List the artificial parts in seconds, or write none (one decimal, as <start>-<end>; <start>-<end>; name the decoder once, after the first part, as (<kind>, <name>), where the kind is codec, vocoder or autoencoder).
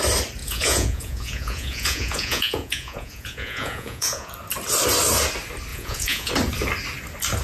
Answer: 0.4-4.3 (vocoder, Vocos); 5.7-6.3